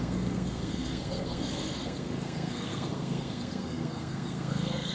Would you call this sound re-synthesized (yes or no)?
yes